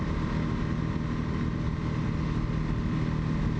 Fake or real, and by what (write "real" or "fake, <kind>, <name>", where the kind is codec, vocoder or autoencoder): real